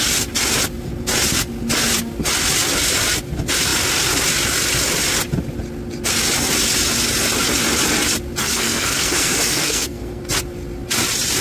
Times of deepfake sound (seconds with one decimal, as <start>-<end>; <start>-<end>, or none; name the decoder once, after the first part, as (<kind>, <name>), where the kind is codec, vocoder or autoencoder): 8.4-10.2 (codec, SNAC)

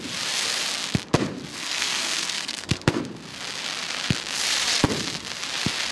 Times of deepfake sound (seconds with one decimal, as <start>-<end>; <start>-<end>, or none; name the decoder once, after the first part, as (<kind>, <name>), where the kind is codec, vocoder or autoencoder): 1.5-3.0 (codec, SNAC)

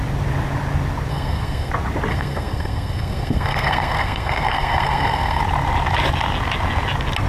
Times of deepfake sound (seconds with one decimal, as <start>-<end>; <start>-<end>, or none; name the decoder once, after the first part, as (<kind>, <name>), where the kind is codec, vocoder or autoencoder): 1.1-1.7 (codec, SNAC); 2.1-5.4

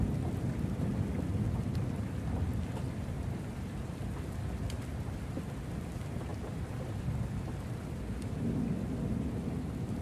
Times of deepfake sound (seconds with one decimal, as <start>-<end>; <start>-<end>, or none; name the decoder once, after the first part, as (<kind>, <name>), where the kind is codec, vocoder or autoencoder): 6.3-7.0 (vocoder, BigVGAN v2)

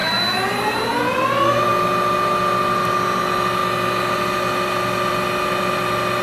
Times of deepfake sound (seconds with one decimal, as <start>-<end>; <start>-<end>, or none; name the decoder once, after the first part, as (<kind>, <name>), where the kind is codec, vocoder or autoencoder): 0.0-0.9 (vocoder, BigVGAN v2)